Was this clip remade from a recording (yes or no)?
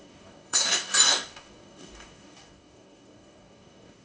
yes